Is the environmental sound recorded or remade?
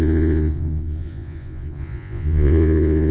remade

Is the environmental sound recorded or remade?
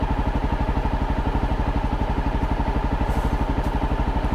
recorded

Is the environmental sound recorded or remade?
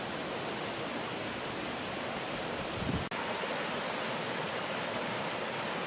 recorded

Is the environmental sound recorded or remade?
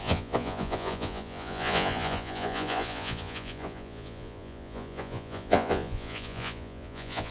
remade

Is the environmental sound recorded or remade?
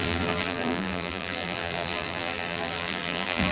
remade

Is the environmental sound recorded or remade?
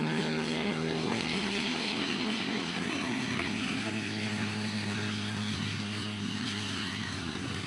remade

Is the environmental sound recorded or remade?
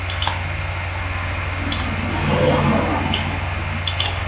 recorded